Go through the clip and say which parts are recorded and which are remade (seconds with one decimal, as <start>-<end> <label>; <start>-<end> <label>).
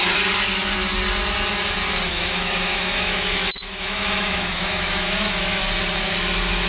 0.0-2.1 recorded; 2.1-5.6 remade; 5.6-6.7 recorded